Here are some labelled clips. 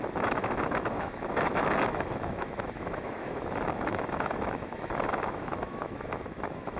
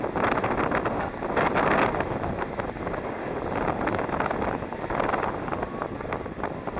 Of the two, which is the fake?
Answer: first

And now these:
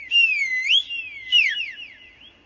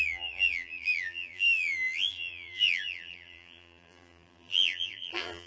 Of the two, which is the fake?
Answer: second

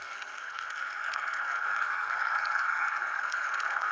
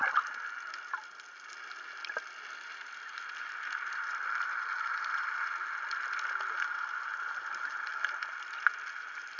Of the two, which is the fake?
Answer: first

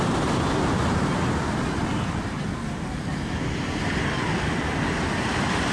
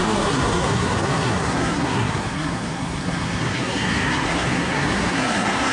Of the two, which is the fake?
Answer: second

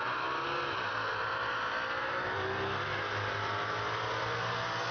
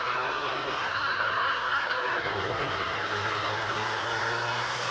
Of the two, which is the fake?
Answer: second